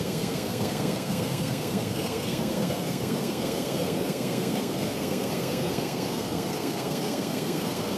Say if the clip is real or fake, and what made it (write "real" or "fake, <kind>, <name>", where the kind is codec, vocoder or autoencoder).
fake, codec, SNAC